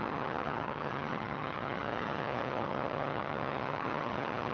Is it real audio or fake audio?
fake